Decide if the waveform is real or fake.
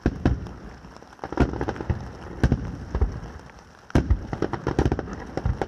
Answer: real